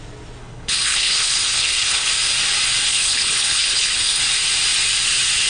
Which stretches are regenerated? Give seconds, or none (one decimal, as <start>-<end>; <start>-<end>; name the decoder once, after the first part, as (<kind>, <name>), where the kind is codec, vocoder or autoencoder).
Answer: 0.4-2.1 (codec, HILCodec); 2.9-4.2